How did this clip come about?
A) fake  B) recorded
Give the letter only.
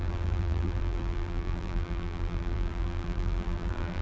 A